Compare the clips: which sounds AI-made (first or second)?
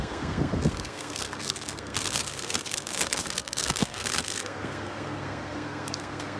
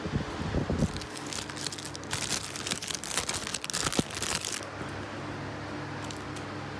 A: first